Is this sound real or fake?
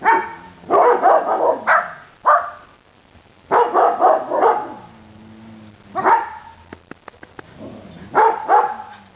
real